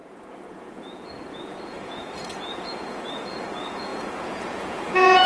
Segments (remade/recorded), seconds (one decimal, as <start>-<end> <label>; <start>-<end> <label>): 0.0-5.3 remade